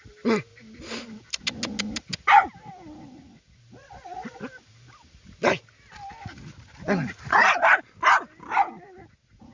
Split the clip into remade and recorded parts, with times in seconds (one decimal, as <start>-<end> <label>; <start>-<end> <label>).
0.0-3.8 recorded; 3.8-4.4 remade; 4.4-9.5 recorded